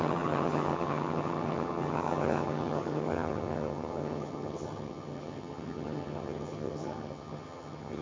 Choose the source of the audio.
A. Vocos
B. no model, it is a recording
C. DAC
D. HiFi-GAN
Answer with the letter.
D